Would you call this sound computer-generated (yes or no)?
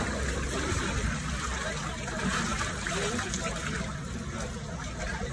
no